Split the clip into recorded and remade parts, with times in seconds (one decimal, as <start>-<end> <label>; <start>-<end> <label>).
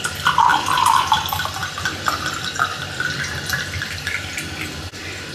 0.0-0.5 recorded; 0.5-1.1 remade; 1.1-5.3 recorded